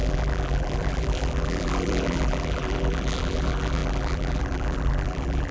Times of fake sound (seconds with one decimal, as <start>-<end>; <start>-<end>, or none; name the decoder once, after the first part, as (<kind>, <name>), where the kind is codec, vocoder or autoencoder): 0.0-5.5 (vocoder, BigVGAN v2)